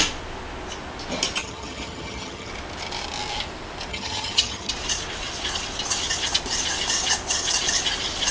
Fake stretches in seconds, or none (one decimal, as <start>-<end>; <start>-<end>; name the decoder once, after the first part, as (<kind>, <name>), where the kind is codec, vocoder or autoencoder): 1.4-2.5 (vocoder, HiFi-GAN); 3.9-4.7